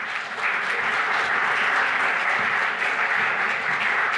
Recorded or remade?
recorded